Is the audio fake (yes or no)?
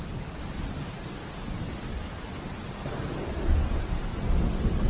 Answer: no